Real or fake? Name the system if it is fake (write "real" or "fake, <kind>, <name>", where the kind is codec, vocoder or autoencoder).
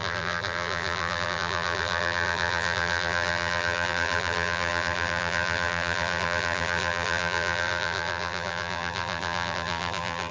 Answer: fake, vocoder, BigVGAN v2